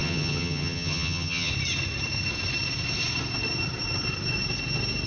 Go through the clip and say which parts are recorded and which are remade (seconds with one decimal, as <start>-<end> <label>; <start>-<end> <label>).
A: 0.0-1.5 remade; 1.5-5.1 recorded